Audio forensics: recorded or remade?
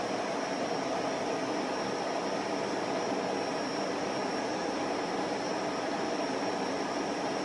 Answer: recorded